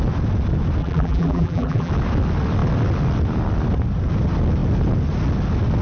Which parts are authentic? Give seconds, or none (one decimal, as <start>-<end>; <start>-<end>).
0.0-0.8; 1.9-5.8